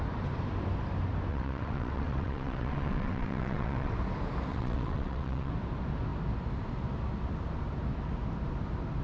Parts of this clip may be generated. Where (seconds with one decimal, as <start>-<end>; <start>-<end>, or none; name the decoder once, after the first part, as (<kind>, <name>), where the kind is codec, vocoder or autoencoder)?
1.3-3.9 (vocoder, WaveNeXt); 4.5-5.5